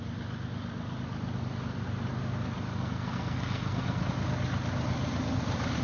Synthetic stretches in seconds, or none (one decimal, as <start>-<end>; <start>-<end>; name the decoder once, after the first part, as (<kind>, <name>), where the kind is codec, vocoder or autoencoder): 2.7-4.1 (codec, SNAC)